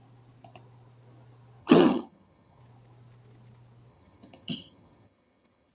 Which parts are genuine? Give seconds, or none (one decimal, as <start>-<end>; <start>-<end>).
0.0-1.6; 2.6-3.9